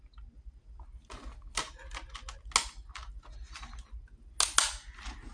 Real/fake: real